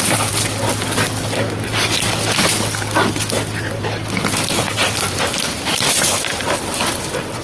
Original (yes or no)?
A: yes